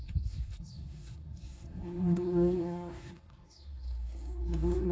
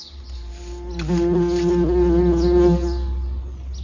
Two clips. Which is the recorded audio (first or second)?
second